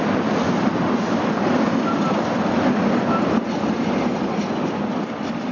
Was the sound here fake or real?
fake